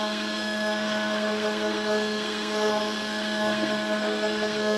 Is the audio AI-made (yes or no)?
yes